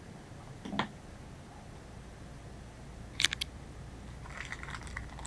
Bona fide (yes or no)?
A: yes